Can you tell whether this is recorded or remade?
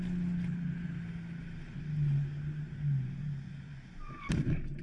recorded